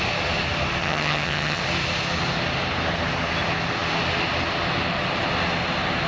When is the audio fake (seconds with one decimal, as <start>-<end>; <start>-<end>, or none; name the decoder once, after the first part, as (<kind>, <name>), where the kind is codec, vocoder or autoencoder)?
0.8-1.6 (vocoder, HiFi-GAN)